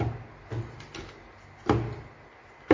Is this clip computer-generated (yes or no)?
no